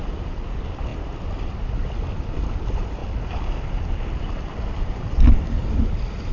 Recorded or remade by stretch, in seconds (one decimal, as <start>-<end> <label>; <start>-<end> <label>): 0.0-6.3 recorded

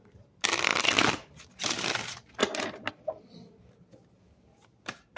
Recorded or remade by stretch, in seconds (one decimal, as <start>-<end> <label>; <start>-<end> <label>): 0.0-5.2 recorded

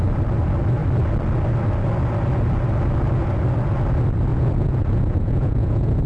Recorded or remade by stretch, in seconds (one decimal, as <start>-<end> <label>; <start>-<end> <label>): 0.0-4.3 recorded; 4.3-6.1 remade